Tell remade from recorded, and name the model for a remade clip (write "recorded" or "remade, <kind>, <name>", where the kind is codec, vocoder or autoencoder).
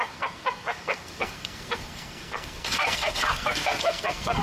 remade, codec, SNAC